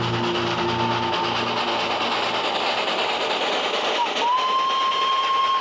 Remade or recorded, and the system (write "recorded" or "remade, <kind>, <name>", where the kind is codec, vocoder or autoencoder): recorded